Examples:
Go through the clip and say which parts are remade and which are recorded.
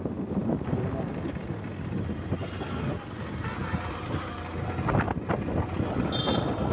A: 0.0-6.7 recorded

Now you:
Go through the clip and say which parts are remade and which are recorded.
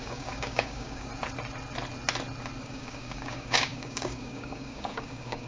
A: 0.0-1.1 remade; 1.1-2.6 recorded; 2.6-5.5 remade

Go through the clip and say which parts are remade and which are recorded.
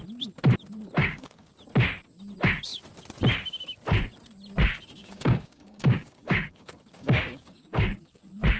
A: 0.0-1.0 recorded; 1.0-1.5 remade; 1.5-5.0 recorded; 5.0-8.2 remade; 8.2-8.6 recorded